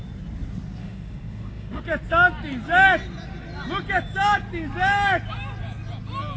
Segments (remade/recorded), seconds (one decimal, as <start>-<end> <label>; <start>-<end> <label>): 0.0-0.8 recorded; 0.8-1.8 remade; 1.8-6.4 recorded